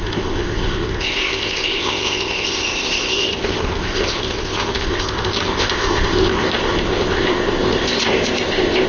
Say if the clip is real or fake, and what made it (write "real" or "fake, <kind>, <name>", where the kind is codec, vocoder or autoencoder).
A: fake, codec, ZipCodec